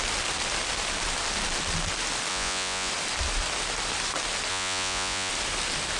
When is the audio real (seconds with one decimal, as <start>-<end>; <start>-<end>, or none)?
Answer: 0.0-2.3; 2.9-4.5; 5.3-6.0